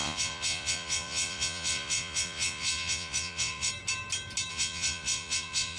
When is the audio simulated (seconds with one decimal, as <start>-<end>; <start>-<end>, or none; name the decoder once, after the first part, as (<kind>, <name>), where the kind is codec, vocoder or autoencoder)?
0.0-3.7 (vocoder, Vocos); 4.5-5.8

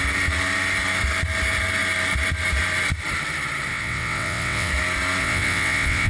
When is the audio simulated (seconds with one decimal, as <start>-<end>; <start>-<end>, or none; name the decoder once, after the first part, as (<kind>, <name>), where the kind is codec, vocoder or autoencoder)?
3.7-4.7 (vocoder, WaveNeXt); 5.2-6.1

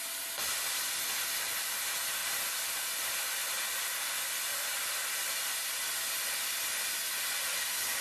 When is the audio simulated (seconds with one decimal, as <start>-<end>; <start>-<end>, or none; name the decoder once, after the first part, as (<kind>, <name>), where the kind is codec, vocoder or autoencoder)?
none

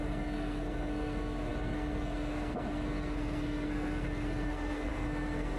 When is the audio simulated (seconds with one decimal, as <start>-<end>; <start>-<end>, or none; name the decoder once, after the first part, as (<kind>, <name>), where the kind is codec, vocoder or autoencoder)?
0.0-5.6 (codec, SNAC)

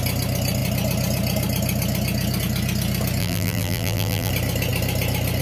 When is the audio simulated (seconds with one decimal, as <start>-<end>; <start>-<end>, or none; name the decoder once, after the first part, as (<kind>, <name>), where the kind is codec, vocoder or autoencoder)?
3.2-4.3 (vocoder, BigVGAN v2)

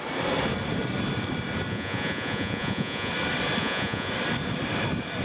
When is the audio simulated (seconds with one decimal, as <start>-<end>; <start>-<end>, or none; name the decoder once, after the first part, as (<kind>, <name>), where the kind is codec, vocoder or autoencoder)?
1.7-3.1 (vocoder, Vocos); 3.6-4.1